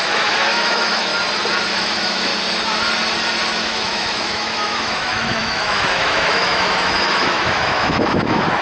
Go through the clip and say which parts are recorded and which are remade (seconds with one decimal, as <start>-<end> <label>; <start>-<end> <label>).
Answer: 0.0-1.1 remade; 1.1-1.7 recorded; 1.7-2.3 remade; 2.3-3.6 recorded; 3.6-8.6 remade